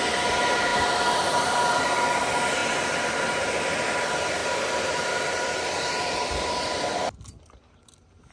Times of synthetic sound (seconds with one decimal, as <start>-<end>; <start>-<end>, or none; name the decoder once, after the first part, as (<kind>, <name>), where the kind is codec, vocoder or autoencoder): none